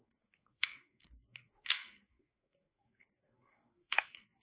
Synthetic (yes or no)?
yes